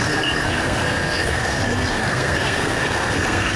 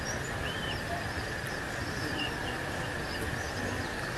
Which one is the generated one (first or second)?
first